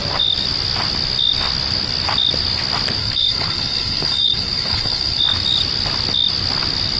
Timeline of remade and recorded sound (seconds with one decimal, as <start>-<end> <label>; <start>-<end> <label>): 0.0-3.0 recorded; 3.0-5.2 remade; 5.2-7.0 recorded